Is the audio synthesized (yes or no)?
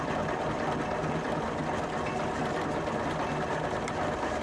no